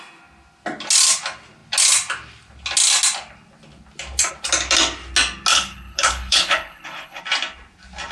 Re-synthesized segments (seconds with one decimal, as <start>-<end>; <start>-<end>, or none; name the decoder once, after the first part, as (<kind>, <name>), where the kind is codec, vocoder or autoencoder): 5.5-7.2 (codec, HILCodec)